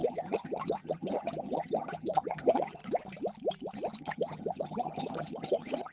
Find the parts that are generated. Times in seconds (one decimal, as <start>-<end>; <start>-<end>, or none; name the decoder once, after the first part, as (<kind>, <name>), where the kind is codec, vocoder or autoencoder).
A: 0.0-2.8 (vocoder, HiFi-GAN); 4.0-5.9